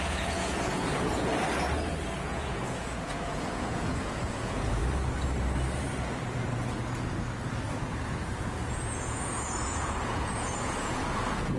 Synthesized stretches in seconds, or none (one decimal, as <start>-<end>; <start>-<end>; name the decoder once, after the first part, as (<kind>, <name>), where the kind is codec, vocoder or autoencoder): 0.0-1.3 (vocoder, Vocos); 2.2-4.8; 8.3-11.6